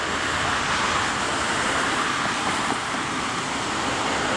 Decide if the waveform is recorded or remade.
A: recorded